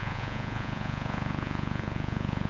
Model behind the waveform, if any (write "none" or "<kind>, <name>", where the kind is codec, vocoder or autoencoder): vocoder, Vocos